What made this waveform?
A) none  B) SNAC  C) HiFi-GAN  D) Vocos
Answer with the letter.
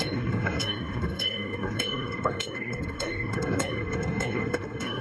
B